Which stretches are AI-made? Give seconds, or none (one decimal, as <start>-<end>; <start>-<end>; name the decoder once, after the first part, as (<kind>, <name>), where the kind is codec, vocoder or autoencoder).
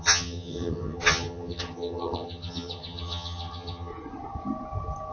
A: 0.0-3.9 (vocoder, HiFi-GAN)